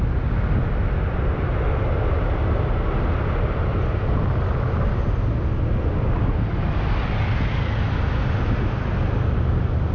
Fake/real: real